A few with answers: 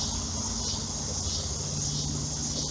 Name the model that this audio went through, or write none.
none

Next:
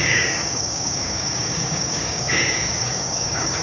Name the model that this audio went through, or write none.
codec, DAC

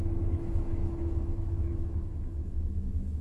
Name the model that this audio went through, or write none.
autoencoder, DAC-VAE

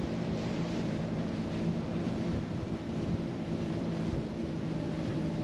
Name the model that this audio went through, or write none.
vocoder, BigVGAN v2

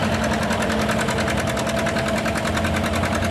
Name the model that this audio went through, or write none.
none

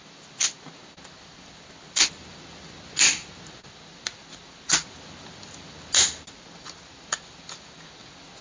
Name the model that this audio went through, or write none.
none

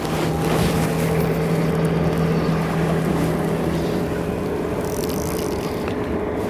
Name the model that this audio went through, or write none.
none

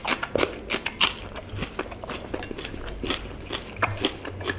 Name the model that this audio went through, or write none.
none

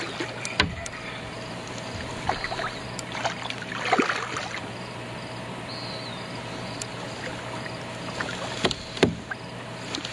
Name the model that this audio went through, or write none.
none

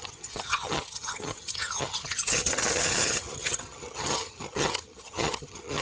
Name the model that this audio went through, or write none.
vocoder, HiFi-GAN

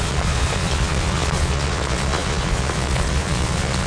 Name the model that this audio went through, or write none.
vocoder, Vocos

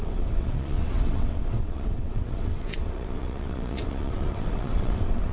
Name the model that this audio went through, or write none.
vocoder, WaveNeXt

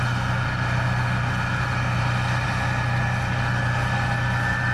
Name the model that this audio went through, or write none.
none